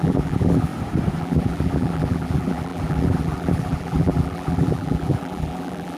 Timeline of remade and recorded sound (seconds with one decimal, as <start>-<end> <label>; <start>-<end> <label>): 0.0-0.7 remade; 0.7-1.2 recorded; 1.2-6.0 remade